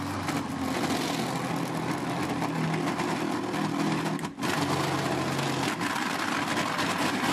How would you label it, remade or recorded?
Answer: recorded